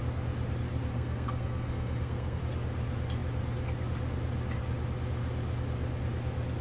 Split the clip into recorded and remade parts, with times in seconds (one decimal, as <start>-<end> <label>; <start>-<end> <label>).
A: 0.0-0.9 recorded; 0.9-2.4 remade; 2.4-6.6 recorded

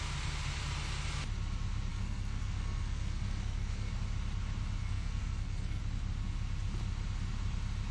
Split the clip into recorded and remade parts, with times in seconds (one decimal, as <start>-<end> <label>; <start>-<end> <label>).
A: 0.0-1.9 recorded; 1.9-3.9 remade; 3.9-4.8 recorded; 4.8-5.8 remade; 5.8-7.9 recorded

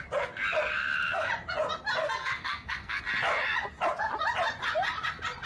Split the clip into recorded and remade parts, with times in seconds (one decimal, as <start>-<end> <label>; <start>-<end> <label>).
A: 0.0-0.7 recorded; 0.7-1.3 remade; 1.3-2.0 recorded; 2.0-3.0 remade; 3.0-5.5 recorded

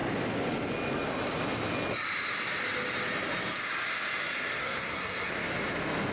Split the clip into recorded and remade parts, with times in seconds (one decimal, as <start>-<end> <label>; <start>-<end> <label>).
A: 0.0-4.6 recorded; 4.6-5.3 remade; 5.3-6.1 recorded